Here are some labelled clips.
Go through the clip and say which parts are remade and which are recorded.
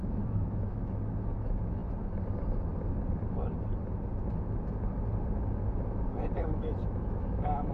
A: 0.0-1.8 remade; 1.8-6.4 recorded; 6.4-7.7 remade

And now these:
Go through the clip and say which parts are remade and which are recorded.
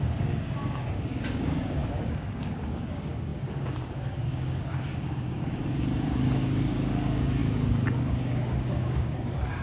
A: 0.0-9.6 remade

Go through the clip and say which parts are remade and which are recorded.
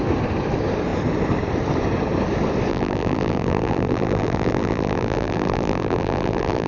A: 0.0-2.7 recorded; 2.7-6.7 remade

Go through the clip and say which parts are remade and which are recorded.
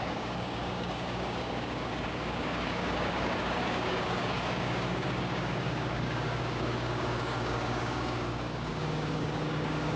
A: 0.0-10.0 remade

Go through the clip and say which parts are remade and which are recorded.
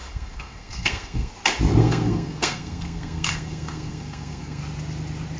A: 0.0-1.3 remade; 1.3-1.8 recorded; 1.8-4.6 remade; 4.6-5.4 recorded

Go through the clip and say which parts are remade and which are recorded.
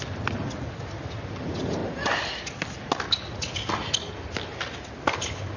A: 0.0-5.6 recorded